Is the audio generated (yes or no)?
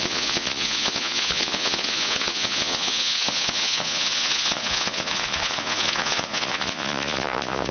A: yes